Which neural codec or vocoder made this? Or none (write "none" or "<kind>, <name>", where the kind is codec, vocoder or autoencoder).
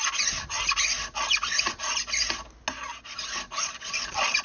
none